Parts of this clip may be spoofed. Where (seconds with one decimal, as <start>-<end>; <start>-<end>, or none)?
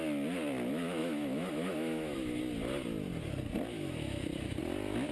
1.0-2.4; 3.7-4.6